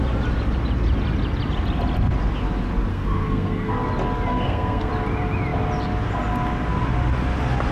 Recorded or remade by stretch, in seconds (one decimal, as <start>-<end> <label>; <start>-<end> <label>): 0.0-2.9 recorded; 2.9-3.7 remade; 3.7-4.3 recorded; 4.3-4.9 remade; 4.9-7.7 recorded